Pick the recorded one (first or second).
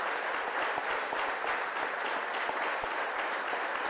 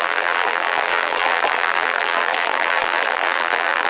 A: first